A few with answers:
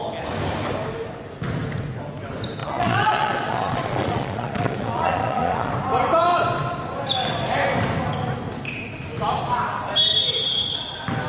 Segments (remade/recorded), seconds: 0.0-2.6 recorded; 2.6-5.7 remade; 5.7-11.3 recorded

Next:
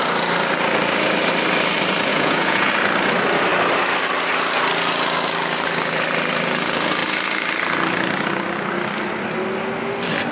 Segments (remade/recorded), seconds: 0.0-2.1 recorded; 2.1-2.7 remade; 2.7-10.3 recorded

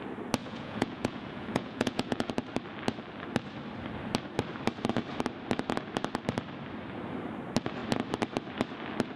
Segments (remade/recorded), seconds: 0.0-0.4 recorded; 0.4-2.3 remade; 2.3-9.2 recorded

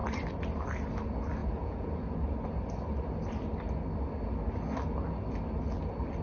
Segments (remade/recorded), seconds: 0.0-1.4 recorded; 1.4-2.2 remade; 2.2-6.2 recorded

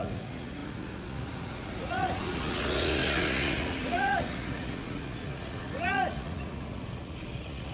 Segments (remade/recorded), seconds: 0.0-7.7 remade

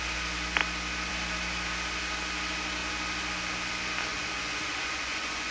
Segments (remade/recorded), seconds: 0.0-4.1 recorded; 4.1-5.5 remade

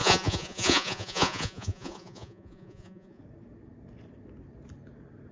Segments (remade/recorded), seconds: 0.0-3.2 remade; 3.2-5.3 recorded

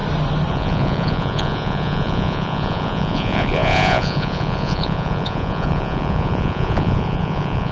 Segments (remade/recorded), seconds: 0.0-0.5 recorded; 0.5-7.7 remade